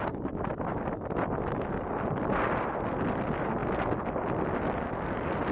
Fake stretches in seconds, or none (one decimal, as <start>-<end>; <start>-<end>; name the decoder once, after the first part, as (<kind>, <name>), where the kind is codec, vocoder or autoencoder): none